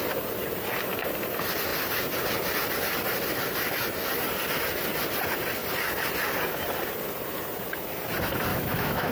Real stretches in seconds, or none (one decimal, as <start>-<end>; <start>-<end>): 0.0-8.5